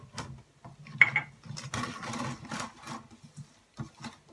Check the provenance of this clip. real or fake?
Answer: real